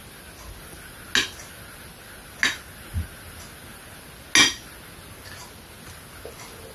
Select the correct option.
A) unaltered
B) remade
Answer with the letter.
A